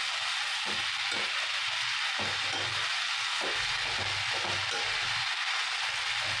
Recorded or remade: recorded